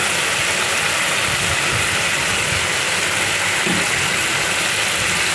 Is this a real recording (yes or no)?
yes